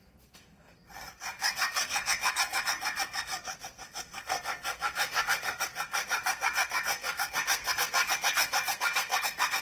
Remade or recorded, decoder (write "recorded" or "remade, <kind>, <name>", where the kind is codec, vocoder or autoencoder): remade, codec, SNAC